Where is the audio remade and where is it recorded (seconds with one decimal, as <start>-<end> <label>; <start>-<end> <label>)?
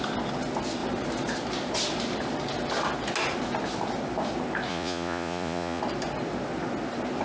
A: 0.0-4.7 recorded; 4.7-5.8 remade; 5.8-7.2 recorded